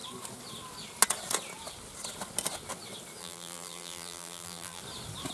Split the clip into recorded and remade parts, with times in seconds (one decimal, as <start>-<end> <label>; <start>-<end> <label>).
0.0-3.2 recorded; 3.2-4.8 remade; 4.8-5.3 recorded